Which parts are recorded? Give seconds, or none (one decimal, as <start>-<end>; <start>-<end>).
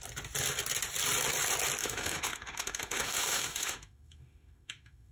0.0-1.8